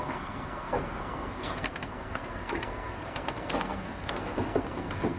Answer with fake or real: fake